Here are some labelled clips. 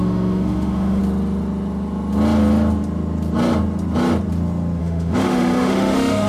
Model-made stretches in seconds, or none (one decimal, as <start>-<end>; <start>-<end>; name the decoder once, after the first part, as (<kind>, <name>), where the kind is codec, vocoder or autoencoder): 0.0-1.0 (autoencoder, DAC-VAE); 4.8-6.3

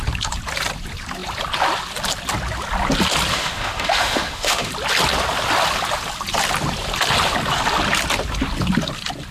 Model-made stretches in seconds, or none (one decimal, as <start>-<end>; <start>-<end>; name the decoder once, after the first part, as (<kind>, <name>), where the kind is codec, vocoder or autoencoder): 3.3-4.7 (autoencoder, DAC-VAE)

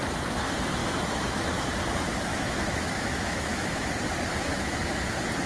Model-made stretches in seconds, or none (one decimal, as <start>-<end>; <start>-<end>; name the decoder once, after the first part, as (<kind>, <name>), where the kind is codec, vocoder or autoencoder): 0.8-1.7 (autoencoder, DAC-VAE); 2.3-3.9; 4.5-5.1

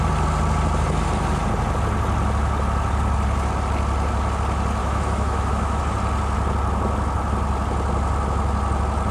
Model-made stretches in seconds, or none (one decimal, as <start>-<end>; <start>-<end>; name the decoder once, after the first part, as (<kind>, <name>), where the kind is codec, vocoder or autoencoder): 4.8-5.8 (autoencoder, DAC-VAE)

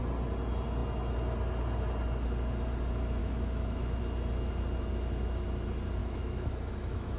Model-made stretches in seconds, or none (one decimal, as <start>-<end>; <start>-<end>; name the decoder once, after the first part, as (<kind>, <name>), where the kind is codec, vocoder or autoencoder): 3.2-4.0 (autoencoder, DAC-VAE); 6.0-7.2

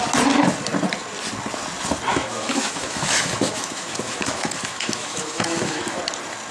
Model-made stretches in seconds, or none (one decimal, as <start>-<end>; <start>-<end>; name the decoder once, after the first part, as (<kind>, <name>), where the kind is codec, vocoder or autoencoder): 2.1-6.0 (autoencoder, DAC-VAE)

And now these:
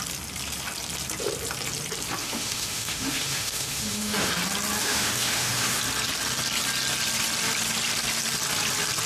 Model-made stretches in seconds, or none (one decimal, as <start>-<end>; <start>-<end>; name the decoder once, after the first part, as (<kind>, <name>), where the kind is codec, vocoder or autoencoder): 2.2-4.3 (autoencoder, DAC-VAE); 4.8-5.8

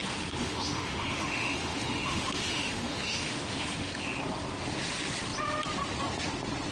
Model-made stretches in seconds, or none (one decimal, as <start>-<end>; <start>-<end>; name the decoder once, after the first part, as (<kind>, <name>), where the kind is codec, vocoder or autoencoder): 0.0-4.0 (autoencoder, DAC-VAE)